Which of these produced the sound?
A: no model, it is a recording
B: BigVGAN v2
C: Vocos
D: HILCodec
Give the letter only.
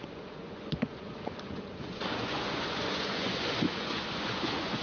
C